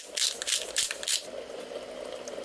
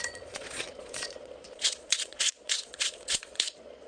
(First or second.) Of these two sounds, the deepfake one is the second